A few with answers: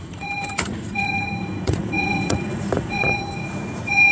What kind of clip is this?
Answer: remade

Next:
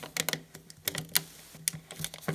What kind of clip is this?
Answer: recorded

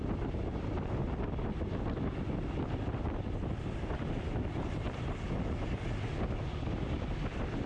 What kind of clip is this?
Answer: recorded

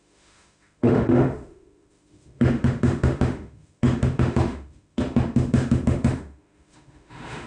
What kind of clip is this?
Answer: remade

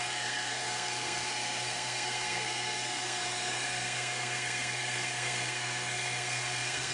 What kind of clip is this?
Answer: remade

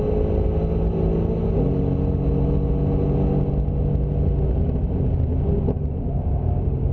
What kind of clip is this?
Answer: recorded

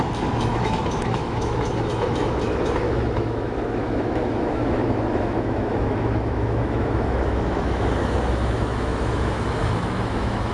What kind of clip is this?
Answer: remade